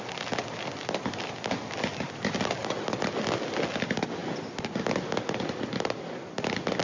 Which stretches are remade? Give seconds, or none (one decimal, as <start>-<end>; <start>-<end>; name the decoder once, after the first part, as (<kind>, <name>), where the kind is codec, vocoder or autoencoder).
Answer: none